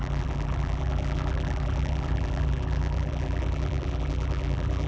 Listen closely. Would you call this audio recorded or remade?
remade